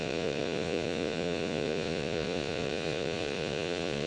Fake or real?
fake